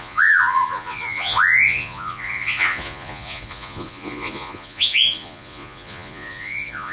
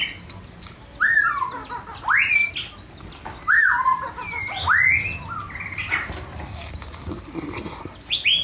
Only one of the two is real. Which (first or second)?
second